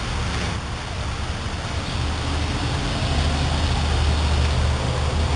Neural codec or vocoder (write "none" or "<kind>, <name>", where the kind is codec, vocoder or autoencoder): none